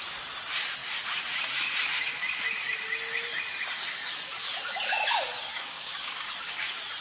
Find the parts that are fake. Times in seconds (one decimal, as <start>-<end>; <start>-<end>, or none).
5.5-6.3